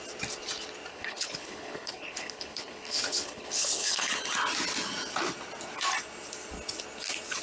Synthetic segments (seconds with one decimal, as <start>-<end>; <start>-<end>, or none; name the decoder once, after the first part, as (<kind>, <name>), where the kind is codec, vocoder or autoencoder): 0.9-4.1 (codec, HILCodec)